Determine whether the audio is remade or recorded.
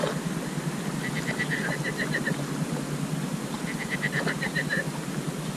recorded